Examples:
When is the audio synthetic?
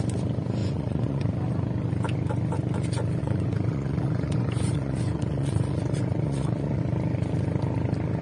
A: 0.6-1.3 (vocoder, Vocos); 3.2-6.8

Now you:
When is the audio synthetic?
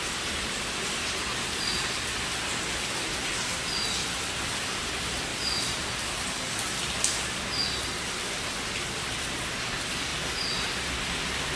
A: none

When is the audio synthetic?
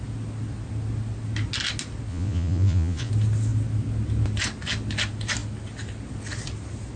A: 2.1-3.1 (vocoder, Vocos)